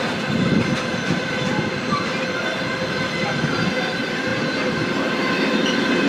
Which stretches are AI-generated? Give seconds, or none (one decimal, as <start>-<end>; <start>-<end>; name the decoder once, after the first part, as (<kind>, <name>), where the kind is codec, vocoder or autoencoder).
none